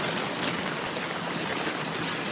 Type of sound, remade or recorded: recorded